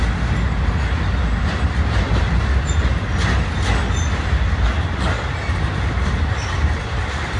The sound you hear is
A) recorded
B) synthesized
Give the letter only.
A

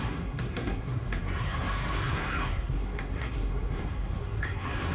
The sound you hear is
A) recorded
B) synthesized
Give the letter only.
B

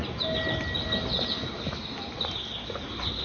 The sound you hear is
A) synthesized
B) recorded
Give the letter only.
B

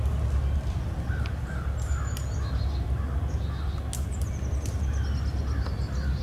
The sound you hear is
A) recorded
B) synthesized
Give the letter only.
A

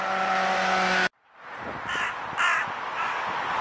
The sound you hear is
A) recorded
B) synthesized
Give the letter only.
A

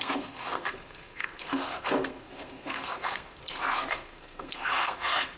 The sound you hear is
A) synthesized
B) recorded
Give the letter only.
A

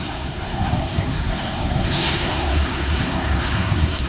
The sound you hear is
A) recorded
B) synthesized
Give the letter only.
B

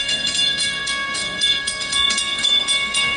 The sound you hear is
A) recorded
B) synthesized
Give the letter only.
B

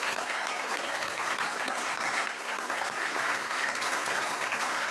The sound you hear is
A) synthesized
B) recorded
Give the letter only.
A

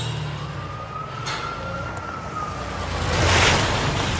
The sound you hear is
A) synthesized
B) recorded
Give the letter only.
B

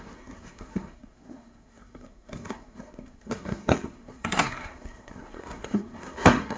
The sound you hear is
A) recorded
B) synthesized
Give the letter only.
B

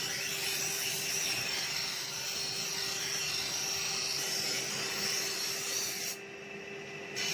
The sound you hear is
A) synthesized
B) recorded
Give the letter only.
B